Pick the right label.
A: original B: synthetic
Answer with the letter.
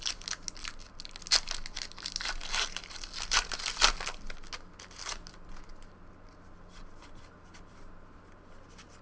A